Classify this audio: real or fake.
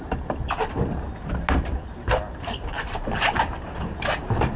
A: real